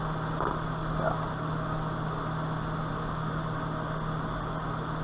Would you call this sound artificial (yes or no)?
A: no